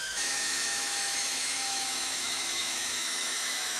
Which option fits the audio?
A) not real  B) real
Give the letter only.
A